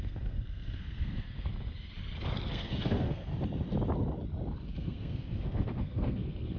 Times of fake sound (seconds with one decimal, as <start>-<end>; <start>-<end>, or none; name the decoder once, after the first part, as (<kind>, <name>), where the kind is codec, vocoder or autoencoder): 0.0-1.5 (codec, SNAC); 2.5-3.3; 4.7-6.6